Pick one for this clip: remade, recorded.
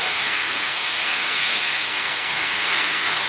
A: remade